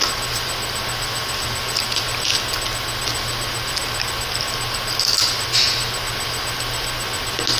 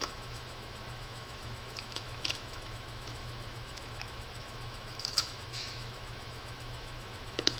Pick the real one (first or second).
first